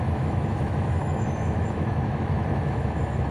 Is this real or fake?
fake